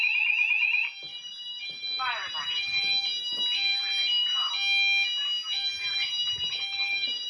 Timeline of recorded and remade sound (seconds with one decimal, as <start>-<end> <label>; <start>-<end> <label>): 0.0-1.1 recorded; 1.1-2.4 remade; 2.4-3.7 recorded; 3.7-4.5 remade; 4.5-6.7 recorded; 6.7-7.3 remade